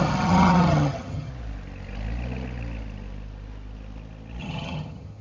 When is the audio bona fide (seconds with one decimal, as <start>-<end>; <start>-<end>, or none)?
1.3-4.4